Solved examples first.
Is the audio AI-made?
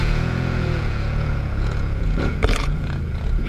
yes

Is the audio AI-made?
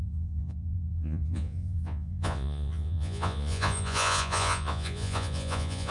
yes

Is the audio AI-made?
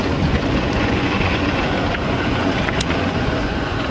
yes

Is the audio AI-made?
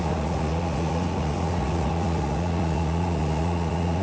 yes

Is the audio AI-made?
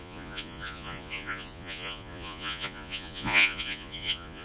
yes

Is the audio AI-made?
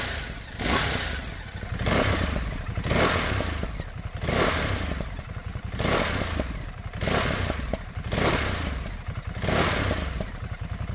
no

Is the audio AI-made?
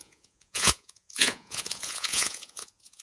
yes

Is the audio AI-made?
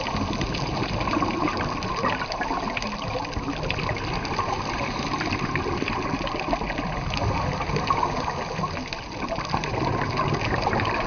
no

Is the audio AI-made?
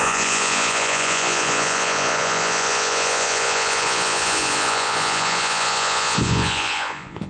yes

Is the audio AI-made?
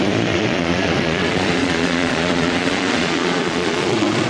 yes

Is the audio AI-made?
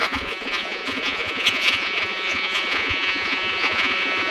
yes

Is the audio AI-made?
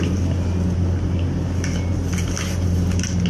no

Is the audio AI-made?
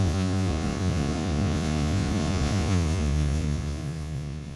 yes